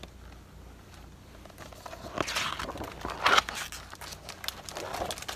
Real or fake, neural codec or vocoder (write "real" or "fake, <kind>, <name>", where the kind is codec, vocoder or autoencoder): real